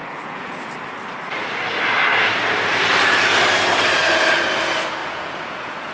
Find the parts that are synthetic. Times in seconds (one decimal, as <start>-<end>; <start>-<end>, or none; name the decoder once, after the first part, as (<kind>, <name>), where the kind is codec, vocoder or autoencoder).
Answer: 0.0-0.7 (vocoder, Vocos); 5.0-5.9